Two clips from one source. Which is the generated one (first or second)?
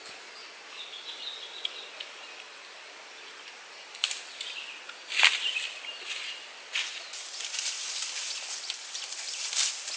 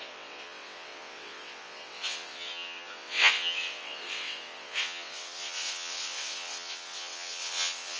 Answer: second